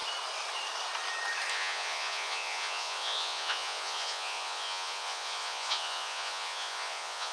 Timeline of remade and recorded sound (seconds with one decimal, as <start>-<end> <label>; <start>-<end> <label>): 0.0-1.5 recorded; 1.5-7.3 remade